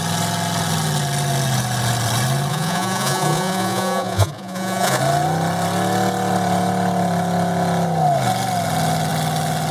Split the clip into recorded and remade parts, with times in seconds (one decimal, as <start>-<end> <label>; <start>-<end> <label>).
0.0-2.5 recorded; 2.5-5.0 remade; 5.0-9.7 recorded